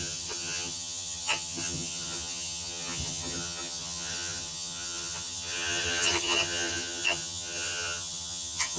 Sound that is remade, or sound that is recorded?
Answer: remade